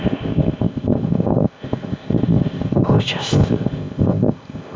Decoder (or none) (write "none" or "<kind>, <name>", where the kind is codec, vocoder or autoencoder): codec, ZipCodec